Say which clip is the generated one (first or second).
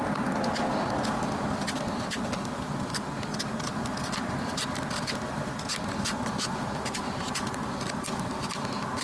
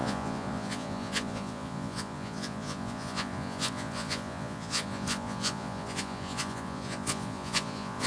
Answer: second